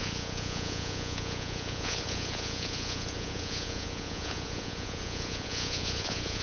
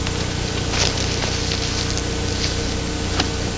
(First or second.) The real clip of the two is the second